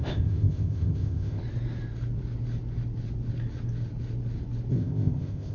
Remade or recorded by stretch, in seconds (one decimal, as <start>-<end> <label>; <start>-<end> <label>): 0.0-1.4 remade; 1.4-4.7 recorded; 4.7-5.5 remade